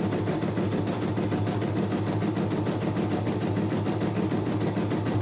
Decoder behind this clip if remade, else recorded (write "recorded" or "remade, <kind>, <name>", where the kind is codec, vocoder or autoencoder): recorded